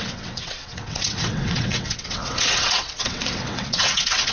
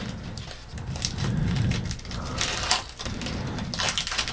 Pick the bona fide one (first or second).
second